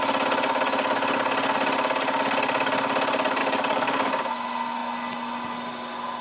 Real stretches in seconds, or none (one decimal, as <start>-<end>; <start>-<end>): 0.0-3.4; 4.1-6.2

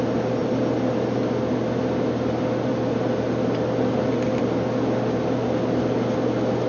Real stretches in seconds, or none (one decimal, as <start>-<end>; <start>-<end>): 0.0-6.7